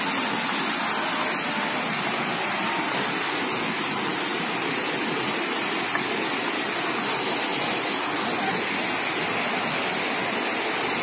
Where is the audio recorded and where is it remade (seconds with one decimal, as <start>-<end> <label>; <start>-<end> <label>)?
0.0-11.0 recorded